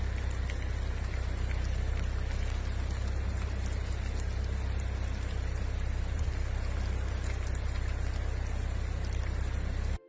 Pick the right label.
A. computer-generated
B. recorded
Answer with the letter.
B